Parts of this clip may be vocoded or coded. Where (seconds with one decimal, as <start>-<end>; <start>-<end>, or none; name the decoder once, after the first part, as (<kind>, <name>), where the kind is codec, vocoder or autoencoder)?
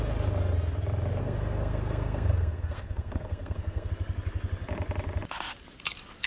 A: 1.2-3.9 (codec, SNAC)